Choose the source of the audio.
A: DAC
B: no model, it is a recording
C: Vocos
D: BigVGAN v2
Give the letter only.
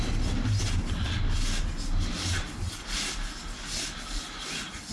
B